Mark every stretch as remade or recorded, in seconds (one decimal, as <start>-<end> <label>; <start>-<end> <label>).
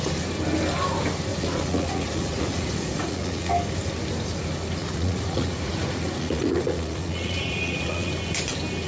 0.0-1.3 recorded; 1.3-3.5 remade; 3.5-4.8 recorded; 4.8-8.1 remade; 8.1-8.9 recorded